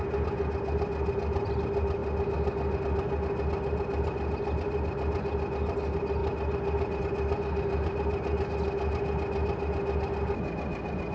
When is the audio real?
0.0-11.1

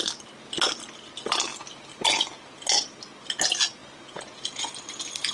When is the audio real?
0.0-3.8; 4.7-5.3

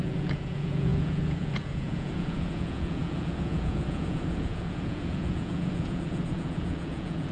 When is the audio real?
none

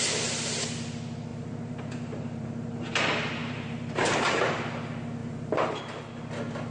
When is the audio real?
0.0-1.3; 2.9-3.4; 4.5-5.2; 6.0-6.7

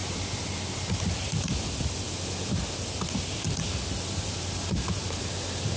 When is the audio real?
0.0-5.8